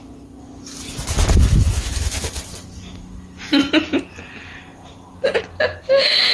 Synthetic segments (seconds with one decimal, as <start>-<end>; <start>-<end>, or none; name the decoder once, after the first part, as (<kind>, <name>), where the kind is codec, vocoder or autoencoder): none